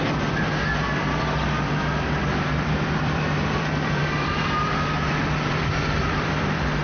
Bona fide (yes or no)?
no